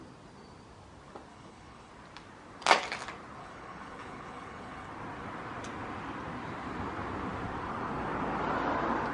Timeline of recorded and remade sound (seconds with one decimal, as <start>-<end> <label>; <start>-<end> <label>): 0.0-1.3 recorded; 1.3-1.9 remade; 1.9-3.4 recorded; 3.4-4.9 remade; 4.9-9.1 recorded